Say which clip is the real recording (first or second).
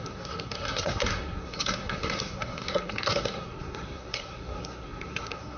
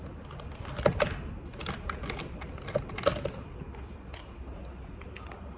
second